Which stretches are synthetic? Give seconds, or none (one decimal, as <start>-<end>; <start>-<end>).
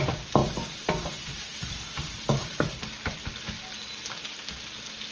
0.4-3.3